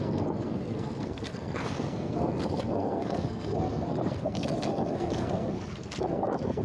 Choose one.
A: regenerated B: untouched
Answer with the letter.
A